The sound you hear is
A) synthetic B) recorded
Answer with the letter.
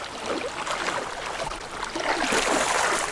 B